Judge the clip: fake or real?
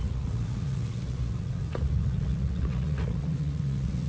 fake